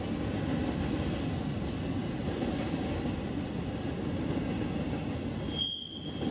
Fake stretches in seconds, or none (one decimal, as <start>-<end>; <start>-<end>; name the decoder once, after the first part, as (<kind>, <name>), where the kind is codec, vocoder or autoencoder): none